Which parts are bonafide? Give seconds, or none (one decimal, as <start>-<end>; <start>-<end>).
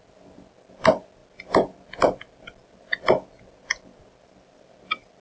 0.0-5.2